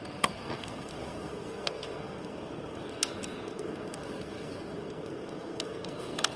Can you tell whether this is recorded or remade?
remade